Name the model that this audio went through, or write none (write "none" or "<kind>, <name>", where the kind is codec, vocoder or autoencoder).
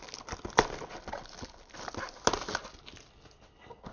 none